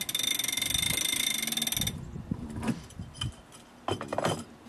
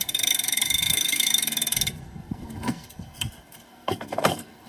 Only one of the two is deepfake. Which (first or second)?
second